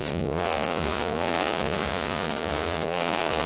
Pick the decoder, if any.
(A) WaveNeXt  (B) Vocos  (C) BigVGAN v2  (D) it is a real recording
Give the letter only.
B